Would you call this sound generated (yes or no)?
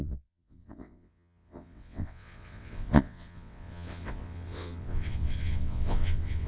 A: yes